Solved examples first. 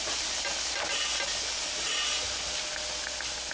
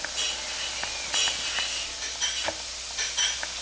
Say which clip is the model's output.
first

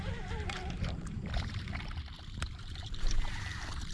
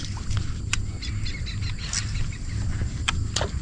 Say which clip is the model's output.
first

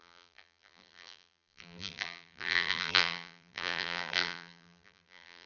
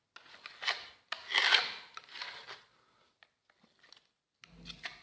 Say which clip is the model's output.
first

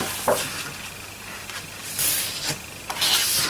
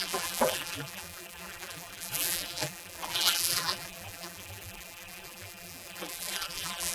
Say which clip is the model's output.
second